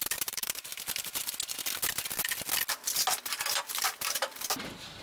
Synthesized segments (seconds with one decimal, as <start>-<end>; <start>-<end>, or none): 0.0-0.7; 3.7-5.0